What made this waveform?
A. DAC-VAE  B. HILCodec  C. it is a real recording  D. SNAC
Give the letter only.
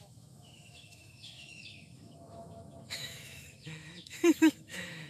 A